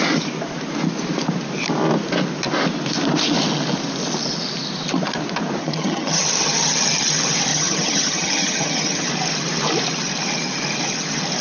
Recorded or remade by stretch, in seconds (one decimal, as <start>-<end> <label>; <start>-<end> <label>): 0.0-5.6 recorded; 5.6-6.2 remade; 6.2-7.5 recorded; 7.5-9.1 remade; 9.1-11.4 recorded